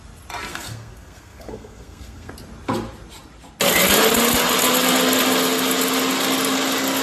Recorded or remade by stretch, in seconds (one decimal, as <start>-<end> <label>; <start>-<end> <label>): 0.0-0.5 recorded; 0.5-2.3 remade; 2.3-7.0 recorded